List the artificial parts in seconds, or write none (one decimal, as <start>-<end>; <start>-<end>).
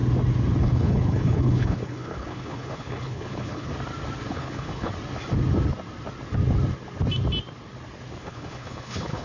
0.6-3.7; 4.3-4.9; 8.2-9.2